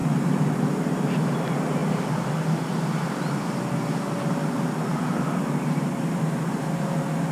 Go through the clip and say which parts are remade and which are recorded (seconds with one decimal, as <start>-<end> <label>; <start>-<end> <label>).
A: 0.0-7.3 recorded